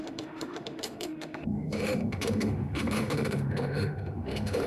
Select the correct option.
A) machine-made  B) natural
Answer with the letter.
A